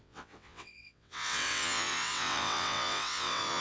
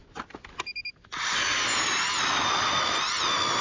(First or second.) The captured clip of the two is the second